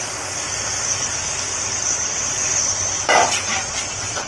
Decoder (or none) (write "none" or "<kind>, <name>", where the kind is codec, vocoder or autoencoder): none